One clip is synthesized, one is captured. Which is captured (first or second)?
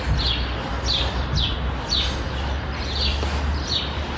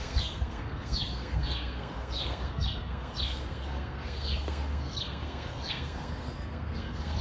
first